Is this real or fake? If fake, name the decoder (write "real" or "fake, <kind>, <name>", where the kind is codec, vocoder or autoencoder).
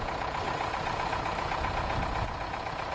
fake, vocoder, Vocos